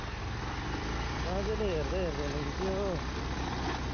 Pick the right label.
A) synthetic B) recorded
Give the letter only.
B